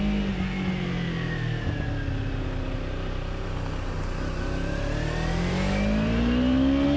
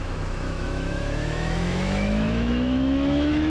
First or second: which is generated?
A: second